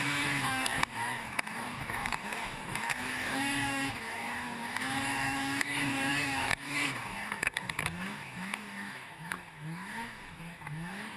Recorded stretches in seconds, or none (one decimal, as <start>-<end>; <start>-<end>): none